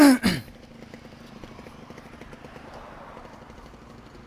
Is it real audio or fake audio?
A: real